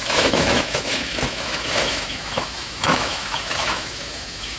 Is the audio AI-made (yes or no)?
yes